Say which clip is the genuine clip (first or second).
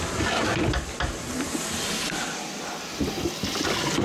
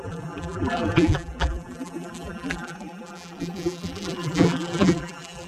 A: first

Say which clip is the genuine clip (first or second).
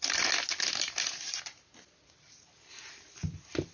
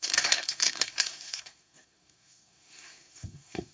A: first